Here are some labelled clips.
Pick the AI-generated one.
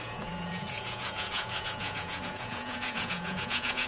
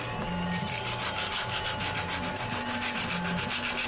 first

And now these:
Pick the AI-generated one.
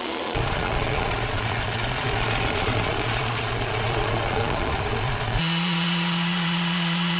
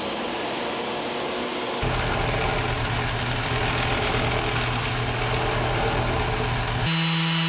first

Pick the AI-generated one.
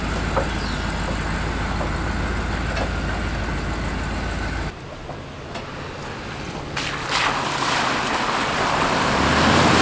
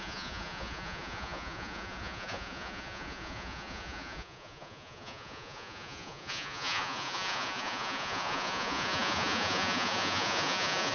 second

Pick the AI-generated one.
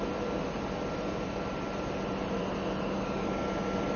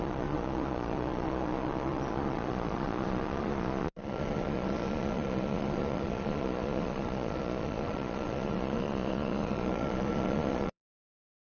second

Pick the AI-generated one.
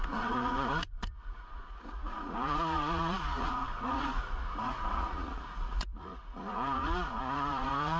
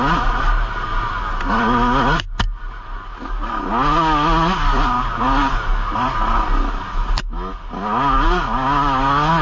first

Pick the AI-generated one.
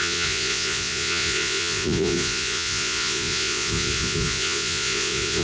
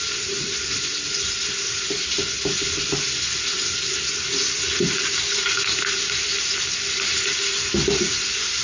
first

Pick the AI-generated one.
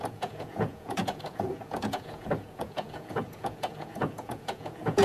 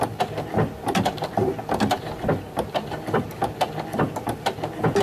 first